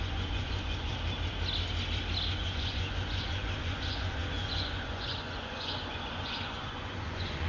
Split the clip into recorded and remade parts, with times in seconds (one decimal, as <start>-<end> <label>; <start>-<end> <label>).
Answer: 0.0-0.9 remade; 0.9-2.3 recorded; 2.3-7.5 remade